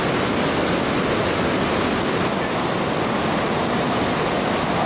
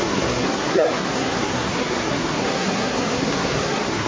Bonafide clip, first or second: first